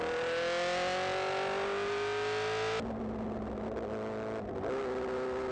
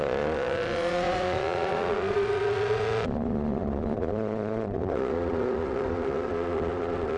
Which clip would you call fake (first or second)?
second